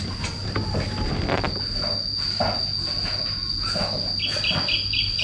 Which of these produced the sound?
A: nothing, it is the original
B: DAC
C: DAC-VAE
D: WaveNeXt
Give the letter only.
A